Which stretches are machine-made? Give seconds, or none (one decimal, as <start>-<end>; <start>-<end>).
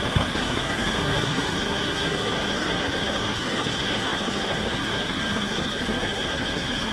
0.0-6.9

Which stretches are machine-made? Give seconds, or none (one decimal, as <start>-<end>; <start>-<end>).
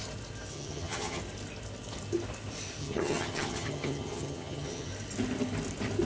0.5-1.2; 2.8-4.9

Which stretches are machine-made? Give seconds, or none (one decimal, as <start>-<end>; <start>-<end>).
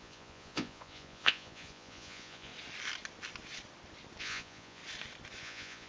0.0-2.5; 4.2-4.8; 5.4-5.9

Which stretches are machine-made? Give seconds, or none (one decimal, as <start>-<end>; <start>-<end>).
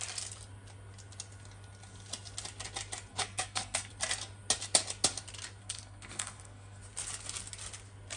3.1-3.9; 5.6-6.8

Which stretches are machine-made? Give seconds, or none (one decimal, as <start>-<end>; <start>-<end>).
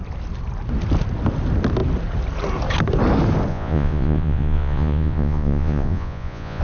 3.5-6.6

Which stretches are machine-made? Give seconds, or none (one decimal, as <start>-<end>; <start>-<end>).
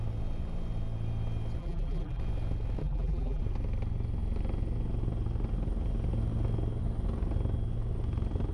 1.6-2.2; 2.8-3.4